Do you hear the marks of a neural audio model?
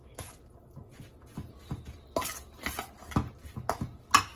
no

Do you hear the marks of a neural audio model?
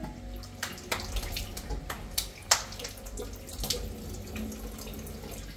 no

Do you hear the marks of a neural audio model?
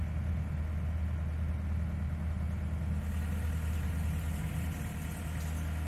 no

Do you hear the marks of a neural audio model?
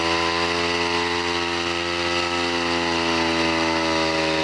no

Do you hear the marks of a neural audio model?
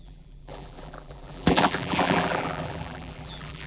yes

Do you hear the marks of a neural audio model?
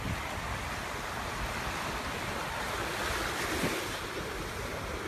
no